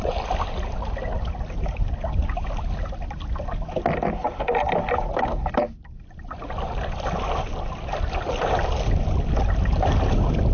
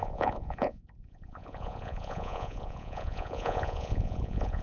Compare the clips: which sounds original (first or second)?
first